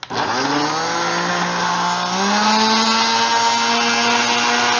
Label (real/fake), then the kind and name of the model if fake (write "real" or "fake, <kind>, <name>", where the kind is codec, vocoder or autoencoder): real